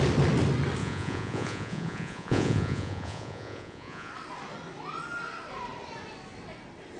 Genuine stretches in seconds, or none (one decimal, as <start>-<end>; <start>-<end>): 0.0-0.8; 4.1-7.0